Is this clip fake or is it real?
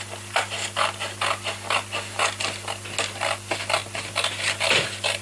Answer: real